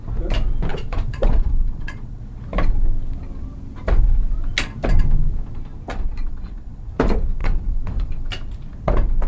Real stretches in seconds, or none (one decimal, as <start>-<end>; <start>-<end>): 0.0-0.7; 2.2-5.9; 6.9-7.4; 8.3-9.3